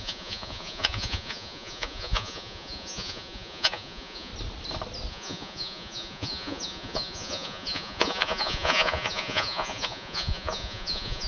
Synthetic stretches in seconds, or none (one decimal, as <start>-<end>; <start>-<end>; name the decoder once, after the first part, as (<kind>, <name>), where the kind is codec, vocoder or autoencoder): 0.0-4.3 (vocoder, Vocos); 5.1-11.3